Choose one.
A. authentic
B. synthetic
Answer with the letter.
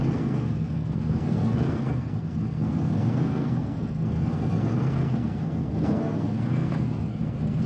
B